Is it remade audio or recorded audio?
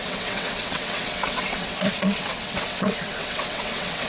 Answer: remade